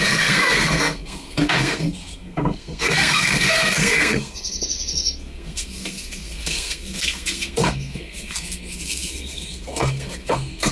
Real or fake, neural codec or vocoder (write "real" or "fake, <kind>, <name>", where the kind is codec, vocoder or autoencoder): fake, codec, SNAC